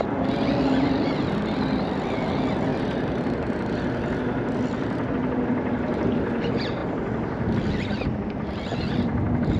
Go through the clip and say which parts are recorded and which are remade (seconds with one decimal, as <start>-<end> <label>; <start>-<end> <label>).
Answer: 0.0-9.6 recorded